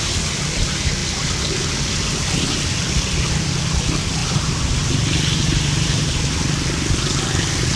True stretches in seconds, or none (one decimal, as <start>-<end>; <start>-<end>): 0.0-4.2; 6.4-7.8